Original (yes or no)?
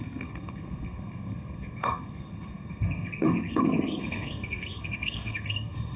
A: no